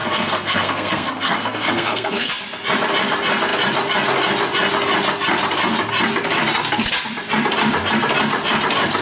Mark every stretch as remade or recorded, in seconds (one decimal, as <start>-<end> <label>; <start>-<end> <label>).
0.0-2.3 remade; 2.3-9.0 recorded